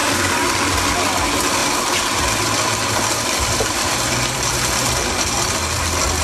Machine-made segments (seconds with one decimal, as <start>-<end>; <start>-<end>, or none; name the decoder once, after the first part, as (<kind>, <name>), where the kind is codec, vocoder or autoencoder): 1.6-5.3 (vocoder, BigVGAN v2)